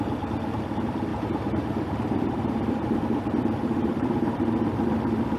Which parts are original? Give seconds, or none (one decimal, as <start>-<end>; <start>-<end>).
0.0-1.1; 3.0-3.6; 4.4-5.4